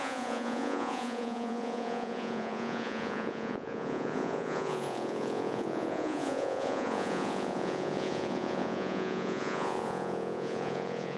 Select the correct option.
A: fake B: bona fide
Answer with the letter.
A